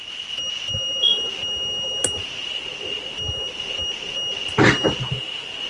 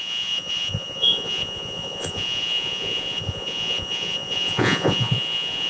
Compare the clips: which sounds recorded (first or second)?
first